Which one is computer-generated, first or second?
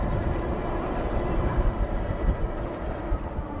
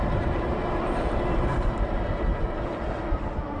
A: first